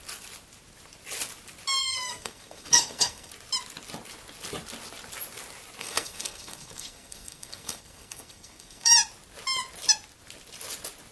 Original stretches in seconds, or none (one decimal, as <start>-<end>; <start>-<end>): 0.0-1.8; 3.3-5.8; 8.9-11.1